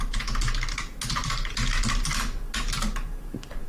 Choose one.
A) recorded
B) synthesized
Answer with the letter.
A